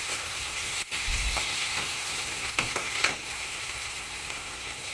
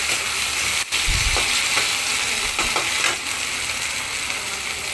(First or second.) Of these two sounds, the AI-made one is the first